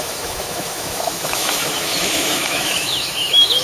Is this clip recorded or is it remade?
remade